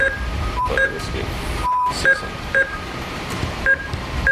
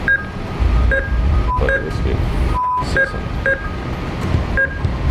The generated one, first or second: first